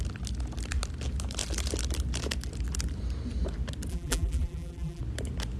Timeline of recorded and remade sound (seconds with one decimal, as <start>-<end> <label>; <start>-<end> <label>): 0.0-3.9 recorded; 3.9-5.0 remade; 5.0-5.6 recorded